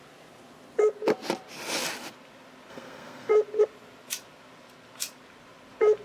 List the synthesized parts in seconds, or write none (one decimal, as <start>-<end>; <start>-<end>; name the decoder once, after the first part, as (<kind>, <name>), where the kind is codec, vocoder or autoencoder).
2.7-3.3 (codec, SNAC)